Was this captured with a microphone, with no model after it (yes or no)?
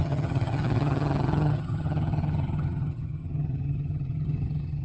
no